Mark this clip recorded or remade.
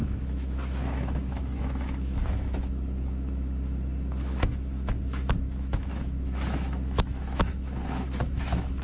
remade